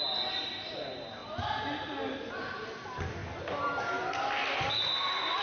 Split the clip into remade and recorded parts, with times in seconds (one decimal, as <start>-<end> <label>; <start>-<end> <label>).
0.0-5.4 recorded